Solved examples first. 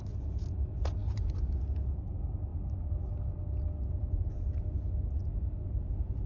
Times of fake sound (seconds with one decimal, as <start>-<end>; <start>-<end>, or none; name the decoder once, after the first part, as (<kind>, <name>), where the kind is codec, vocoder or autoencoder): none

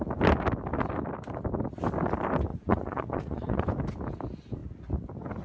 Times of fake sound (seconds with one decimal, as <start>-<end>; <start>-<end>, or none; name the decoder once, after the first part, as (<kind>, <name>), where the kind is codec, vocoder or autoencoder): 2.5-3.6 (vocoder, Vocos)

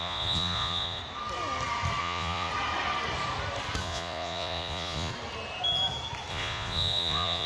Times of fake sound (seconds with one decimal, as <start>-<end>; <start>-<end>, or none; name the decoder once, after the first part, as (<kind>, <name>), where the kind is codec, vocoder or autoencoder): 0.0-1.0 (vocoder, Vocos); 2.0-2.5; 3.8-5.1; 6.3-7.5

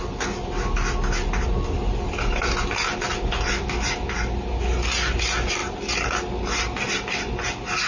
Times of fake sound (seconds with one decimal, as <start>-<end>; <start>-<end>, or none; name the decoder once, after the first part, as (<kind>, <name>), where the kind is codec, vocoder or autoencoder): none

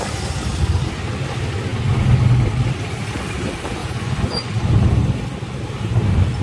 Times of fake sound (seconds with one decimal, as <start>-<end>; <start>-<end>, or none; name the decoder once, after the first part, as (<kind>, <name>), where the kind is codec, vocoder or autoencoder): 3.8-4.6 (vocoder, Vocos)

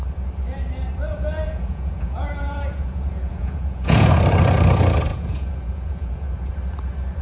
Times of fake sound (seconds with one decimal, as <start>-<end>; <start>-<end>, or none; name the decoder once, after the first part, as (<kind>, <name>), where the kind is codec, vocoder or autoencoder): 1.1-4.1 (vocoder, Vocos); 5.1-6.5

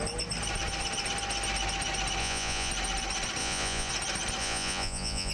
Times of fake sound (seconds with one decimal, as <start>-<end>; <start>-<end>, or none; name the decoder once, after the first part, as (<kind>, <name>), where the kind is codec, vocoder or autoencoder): 2.2-2.7 (vocoder, Vocos); 3.4-3.9; 4.4-5.3